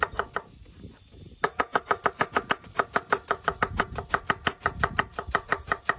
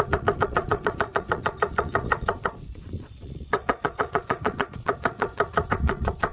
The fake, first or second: second